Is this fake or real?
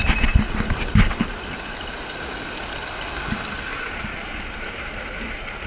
real